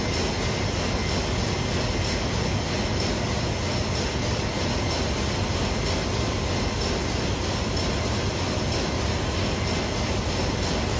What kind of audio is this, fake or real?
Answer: real